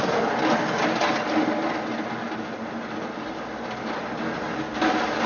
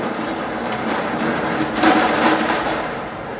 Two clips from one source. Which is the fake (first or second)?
second